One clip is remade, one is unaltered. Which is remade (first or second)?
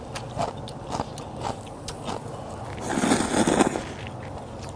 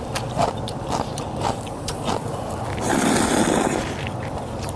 second